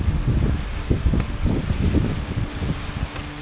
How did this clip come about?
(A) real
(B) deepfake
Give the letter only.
A